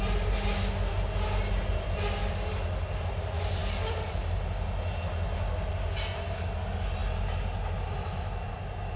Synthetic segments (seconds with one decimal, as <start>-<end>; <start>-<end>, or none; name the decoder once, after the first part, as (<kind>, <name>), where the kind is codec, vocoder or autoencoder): none